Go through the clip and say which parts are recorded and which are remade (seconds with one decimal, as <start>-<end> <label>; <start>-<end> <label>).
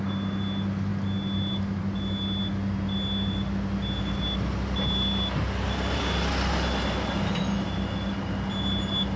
0.0-9.2 recorded